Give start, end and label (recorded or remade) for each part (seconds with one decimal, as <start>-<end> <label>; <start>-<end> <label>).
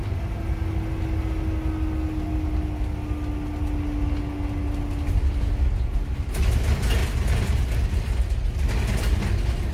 0.0-9.7 recorded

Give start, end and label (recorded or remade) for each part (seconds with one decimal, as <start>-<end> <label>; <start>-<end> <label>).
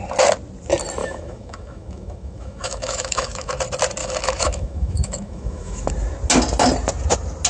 0.0-1.0 recorded; 1.0-3.5 remade; 3.5-4.0 recorded; 4.0-5.9 remade; 5.9-7.5 recorded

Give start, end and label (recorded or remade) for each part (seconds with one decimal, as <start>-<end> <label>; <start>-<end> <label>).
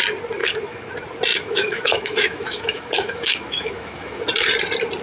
0.0-0.4 recorded; 0.4-0.9 remade; 0.9-1.3 recorded; 1.3-4.2 remade; 4.2-5.0 recorded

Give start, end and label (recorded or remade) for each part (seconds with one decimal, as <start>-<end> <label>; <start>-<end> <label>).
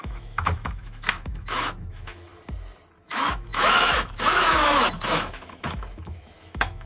0.0-2.3 remade; 2.3-3.0 recorded; 3.0-6.9 remade